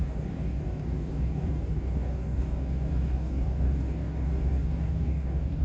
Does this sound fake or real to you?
fake